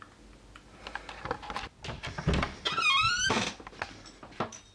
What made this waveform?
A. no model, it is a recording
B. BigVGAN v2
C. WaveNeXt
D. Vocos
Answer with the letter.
A